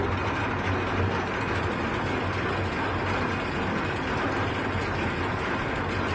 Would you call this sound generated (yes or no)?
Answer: no